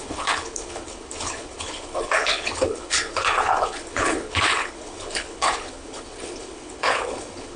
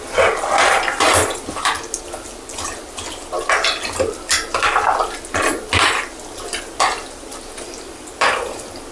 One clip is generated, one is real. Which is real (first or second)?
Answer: second